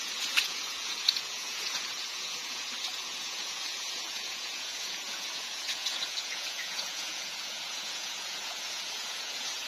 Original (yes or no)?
no